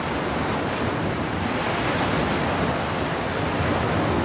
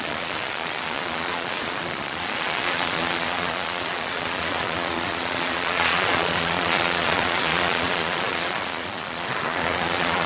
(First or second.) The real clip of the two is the first